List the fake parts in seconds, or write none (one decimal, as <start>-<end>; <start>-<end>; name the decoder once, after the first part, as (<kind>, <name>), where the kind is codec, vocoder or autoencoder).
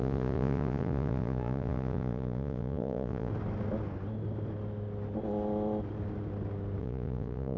0.0-3.3 (vocoder, Vocos); 6.8-7.6